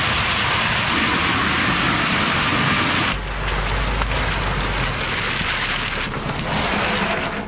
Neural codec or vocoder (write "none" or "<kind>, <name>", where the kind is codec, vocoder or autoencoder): none